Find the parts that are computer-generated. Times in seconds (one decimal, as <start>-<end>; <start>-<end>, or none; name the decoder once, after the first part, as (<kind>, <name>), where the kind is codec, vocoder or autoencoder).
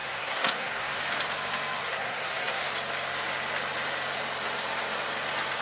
0.0-1.0 (codec, SNAC); 1.8-2.7